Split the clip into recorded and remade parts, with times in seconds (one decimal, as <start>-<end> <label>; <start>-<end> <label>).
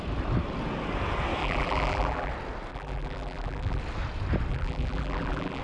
0.0-1.4 recorded; 1.4-2.3 remade; 2.3-2.7 recorded; 2.7-3.8 remade; 3.8-4.5 recorded; 4.5-5.6 remade